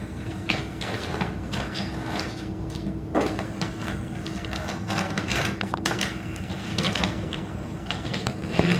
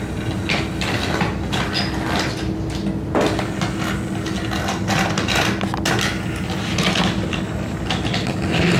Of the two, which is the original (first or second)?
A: second